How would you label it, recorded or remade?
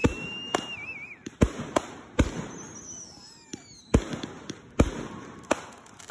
recorded